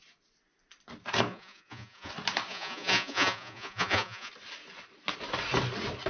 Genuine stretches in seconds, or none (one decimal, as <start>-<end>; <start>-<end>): 0.0-1.3; 2.1-2.5; 4.3-6.1